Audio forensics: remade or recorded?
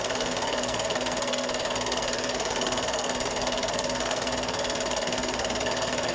remade